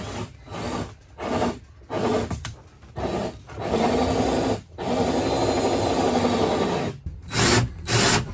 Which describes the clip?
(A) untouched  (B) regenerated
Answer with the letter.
A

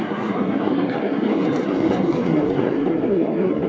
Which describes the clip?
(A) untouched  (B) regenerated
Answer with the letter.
B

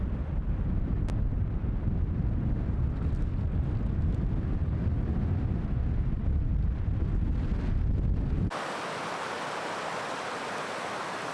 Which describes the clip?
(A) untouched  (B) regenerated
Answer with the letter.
A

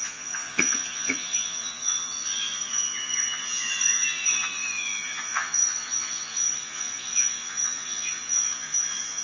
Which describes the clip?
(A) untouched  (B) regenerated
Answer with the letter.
B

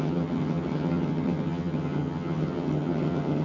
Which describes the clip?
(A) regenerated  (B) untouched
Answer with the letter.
A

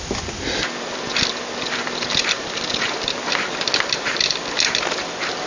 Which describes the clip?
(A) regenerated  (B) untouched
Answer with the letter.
B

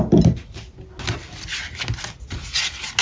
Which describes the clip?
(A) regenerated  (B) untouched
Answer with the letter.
B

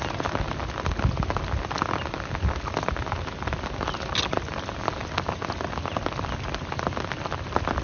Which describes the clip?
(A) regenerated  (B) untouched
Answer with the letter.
B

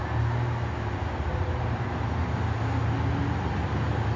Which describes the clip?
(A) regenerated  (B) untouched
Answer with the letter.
B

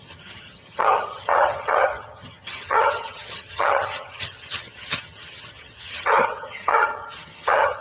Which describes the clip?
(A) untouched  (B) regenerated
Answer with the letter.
B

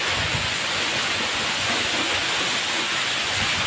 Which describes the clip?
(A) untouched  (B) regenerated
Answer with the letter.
B